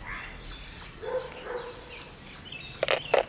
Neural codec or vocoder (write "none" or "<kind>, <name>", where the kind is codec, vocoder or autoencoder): none